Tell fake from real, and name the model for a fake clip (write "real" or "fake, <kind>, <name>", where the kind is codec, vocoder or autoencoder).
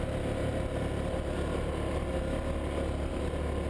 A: real